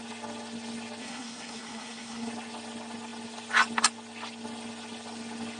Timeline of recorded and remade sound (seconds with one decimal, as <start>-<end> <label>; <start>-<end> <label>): 0.0-1.0 recorded; 1.0-2.3 remade; 2.3-5.6 recorded